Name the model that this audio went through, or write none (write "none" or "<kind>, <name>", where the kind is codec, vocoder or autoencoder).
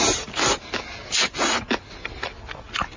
none